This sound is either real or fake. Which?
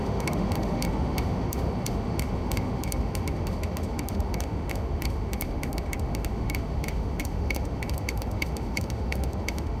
fake